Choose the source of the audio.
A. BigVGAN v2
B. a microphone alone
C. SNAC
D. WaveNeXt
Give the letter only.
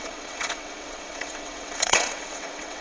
D